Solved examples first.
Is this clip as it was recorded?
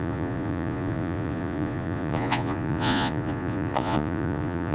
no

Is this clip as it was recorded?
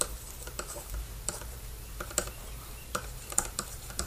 no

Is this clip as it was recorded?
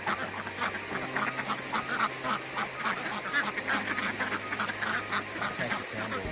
yes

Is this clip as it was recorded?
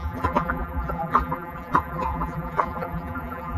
no